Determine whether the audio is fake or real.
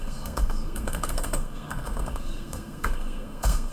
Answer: fake